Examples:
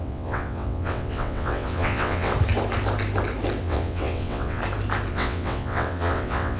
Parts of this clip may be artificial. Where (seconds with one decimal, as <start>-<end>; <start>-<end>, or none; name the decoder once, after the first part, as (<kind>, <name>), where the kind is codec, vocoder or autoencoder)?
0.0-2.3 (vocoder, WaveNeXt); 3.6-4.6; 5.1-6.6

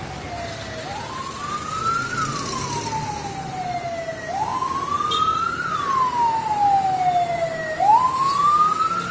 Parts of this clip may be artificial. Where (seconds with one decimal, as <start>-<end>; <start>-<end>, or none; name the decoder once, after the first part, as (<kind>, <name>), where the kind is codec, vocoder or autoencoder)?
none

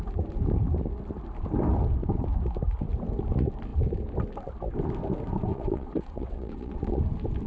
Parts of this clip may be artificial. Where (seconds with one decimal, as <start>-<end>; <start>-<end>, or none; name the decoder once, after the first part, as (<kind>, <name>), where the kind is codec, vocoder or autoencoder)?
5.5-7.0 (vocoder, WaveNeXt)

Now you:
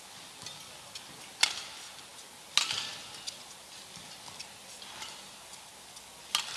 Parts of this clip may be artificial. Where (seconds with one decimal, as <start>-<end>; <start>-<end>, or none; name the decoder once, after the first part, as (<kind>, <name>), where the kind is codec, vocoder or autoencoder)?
none

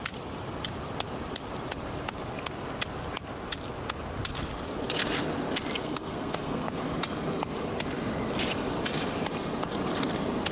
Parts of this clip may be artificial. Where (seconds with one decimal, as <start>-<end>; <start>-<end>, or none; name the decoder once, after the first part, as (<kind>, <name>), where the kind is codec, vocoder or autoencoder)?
5.8-6.7 (codec, SNAC)

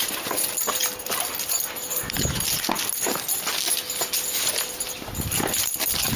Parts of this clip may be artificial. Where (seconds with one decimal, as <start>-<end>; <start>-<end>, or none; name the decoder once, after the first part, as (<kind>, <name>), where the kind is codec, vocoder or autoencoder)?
0.0-0.8 (vocoder, BigVGAN v2); 4.5-6.2